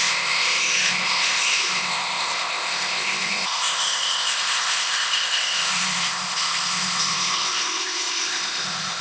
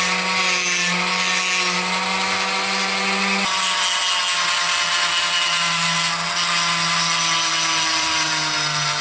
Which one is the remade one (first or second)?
first